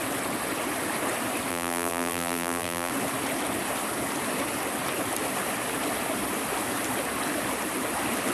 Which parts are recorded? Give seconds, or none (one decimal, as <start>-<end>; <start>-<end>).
0.0-1.5; 2.9-8.3